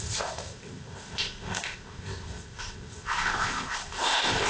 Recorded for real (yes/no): no